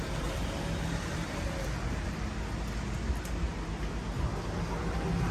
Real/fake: real